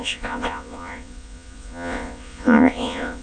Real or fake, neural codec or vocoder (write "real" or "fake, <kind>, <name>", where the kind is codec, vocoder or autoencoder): fake, vocoder, Vocos